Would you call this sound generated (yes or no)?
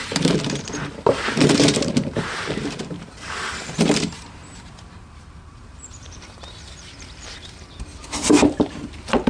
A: yes